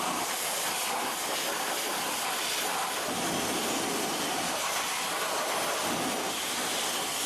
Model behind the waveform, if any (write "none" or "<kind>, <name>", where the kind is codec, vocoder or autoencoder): none